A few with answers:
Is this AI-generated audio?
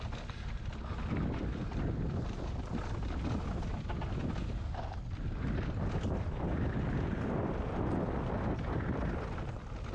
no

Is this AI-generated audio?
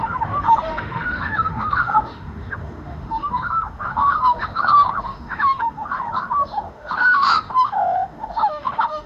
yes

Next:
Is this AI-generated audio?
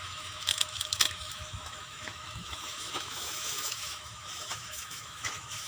yes